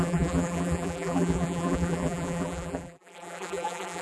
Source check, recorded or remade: remade